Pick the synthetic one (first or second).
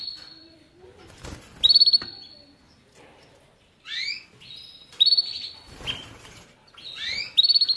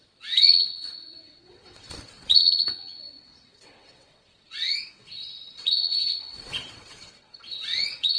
second